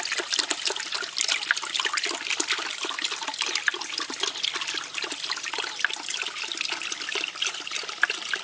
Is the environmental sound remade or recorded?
recorded